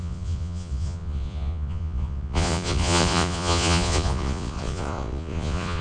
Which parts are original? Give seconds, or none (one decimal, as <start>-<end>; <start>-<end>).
none